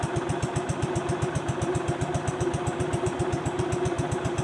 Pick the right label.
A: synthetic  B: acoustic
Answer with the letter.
B